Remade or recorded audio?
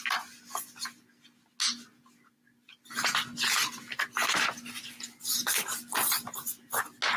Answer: recorded